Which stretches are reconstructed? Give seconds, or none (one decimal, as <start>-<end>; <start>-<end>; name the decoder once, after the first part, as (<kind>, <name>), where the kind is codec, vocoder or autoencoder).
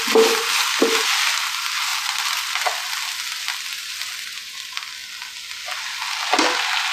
none